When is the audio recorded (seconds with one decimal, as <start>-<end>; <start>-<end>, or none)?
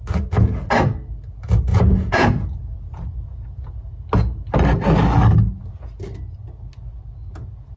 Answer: 0.0-1.7; 3.9-7.8